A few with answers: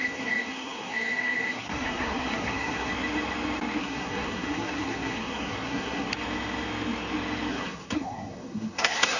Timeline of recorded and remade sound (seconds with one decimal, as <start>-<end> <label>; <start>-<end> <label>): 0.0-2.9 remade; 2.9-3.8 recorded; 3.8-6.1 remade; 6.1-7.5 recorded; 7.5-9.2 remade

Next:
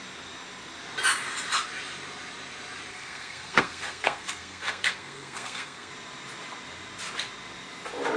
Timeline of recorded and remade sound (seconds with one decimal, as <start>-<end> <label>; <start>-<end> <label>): 0.0-2.9 recorded; 2.9-5.9 remade; 5.9-8.2 recorded

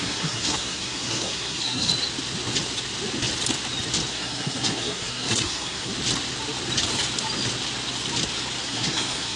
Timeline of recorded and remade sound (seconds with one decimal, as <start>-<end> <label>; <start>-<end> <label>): 0.0-1.9 remade; 1.9-4.1 recorded; 4.1-5.9 remade; 5.9-8.6 recorded; 8.6-9.4 remade

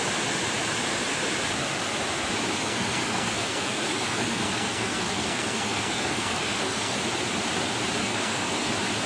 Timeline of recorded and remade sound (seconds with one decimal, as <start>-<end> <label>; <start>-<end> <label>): 0.0-2.6 recorded; 2.6-7.0 remade; 7.0-8.0 recorded; 8.0-8.7 remade; 8.7-9.1 recorded

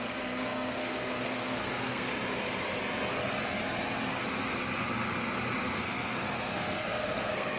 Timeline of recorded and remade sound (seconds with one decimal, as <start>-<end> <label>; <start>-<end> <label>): 0.0-2.1 remade; 2.1-5.8 recorded; 5.8-7.6 remade

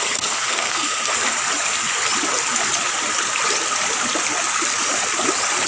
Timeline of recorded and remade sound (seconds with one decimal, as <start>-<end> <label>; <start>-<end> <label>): 0.0-1.1 remade; 1.1-5.7 recorded